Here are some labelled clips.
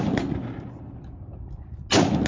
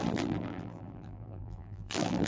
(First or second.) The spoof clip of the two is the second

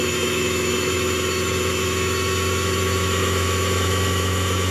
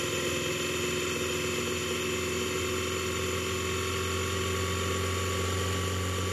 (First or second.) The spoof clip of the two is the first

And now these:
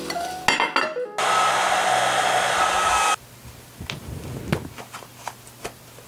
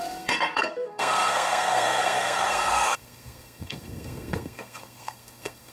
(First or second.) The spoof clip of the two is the second